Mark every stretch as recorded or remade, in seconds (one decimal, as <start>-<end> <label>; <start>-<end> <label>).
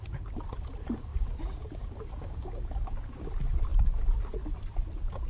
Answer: 0.0-1.1 recorded; 1.1-3.3 remade; 3.3-5.3 recorded